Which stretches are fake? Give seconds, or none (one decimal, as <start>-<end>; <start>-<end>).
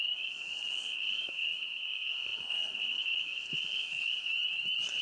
0.0-4.3